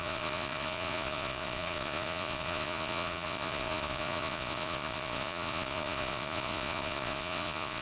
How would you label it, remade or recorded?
remade